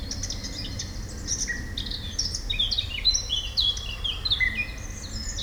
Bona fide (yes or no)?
yes